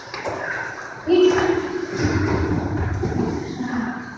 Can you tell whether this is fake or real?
real